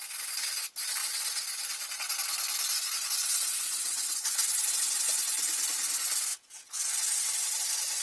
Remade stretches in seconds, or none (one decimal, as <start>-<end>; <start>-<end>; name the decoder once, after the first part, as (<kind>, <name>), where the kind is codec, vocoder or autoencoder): 6.3-6.9 (vocoder, Vocos)